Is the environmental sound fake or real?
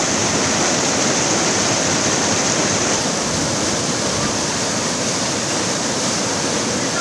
real